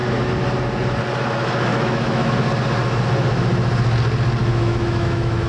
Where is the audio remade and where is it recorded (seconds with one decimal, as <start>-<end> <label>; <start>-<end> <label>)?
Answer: 0.0-1.7 recorded; 1.7-2.3 remade; 2.3-4.4 recorded; 4.4-5.5 remade